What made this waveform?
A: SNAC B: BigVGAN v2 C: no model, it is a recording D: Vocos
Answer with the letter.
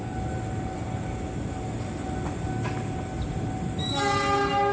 C